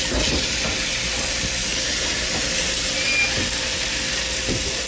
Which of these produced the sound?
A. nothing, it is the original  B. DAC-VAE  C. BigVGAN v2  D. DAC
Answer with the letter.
A